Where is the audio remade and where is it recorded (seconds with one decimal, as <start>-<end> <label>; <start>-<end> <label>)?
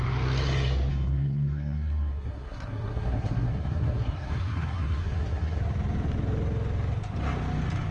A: 0.0-0.9 recorded; 0.9-5.6 remade; 5.6-7.9 recorded